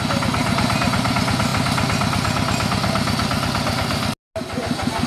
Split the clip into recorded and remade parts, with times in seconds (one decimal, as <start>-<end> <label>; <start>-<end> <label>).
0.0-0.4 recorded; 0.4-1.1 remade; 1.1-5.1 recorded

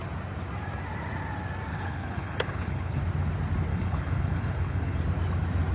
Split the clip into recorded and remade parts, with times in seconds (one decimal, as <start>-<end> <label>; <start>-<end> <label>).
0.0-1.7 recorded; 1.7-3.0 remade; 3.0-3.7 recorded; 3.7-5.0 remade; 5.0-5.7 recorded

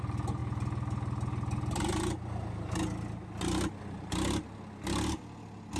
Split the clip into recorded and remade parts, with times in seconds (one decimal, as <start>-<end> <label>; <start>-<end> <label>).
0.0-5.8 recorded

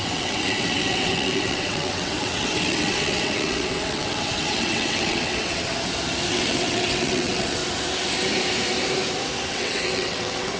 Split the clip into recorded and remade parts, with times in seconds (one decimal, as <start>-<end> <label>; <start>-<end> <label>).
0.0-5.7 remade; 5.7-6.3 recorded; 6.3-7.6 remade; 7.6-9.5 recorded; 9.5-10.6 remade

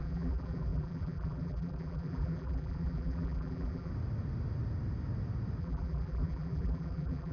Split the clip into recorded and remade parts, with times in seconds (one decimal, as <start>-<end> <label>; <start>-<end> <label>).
0.0-3.9 remade; 3.9-5.6 recorded; 5.6-7.3 remade